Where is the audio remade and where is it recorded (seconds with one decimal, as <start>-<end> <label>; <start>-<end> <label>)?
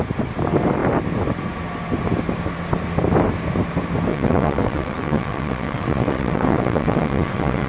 0.0-4.1 recorded; 4.1-7.7 remade